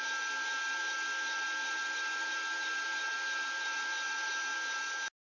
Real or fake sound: real